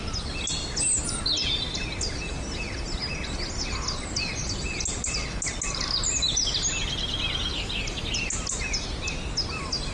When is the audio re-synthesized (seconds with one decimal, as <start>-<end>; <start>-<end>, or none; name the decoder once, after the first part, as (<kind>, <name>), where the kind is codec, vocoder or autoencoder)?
none